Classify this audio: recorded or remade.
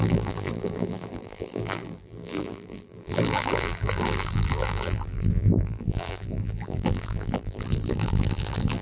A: remade